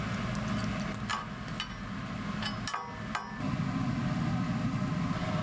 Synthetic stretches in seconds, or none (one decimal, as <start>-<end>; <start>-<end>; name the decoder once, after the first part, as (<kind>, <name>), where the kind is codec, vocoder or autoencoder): none